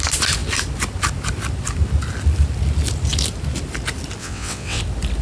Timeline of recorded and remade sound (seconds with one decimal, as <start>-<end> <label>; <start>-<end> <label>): 0.0-4.2 recorded; 4.2-4.8 remade; 4.8-5.2 recorded